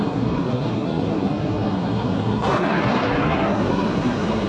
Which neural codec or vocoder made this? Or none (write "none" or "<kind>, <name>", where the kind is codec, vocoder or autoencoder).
codec, SNAC